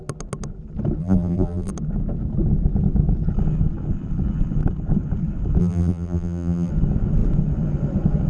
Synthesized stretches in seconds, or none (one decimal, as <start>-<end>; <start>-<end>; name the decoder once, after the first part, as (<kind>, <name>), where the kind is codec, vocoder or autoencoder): 1.0-1.7 (vocoder, BigVGAN v2); 5.6-6.7